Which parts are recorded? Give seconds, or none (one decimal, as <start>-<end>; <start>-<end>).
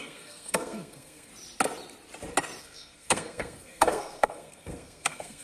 1.3-2.6